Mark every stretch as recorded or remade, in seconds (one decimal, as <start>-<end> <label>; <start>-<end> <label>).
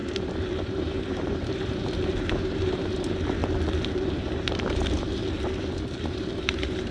0.0-3.4 remade; 3.4-3.9 recorded; 3.9-5.2 remade; 5.2-6.0 recorded; 6.0-6.9 remade